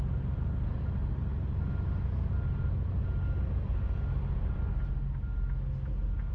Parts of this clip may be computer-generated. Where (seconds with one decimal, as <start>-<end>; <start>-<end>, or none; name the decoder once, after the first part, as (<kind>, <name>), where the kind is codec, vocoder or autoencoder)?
none